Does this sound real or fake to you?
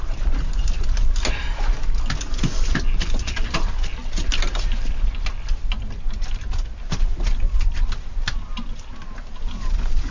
real